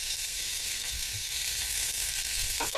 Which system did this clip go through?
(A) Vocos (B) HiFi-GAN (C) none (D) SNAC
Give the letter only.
D